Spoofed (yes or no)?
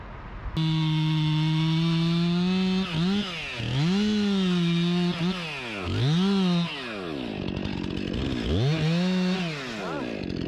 no